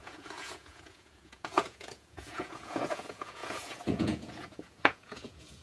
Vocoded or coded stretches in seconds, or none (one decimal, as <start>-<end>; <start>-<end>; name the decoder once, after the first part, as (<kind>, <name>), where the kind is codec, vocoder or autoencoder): 0.0-5.6 (vocoder, Vocos)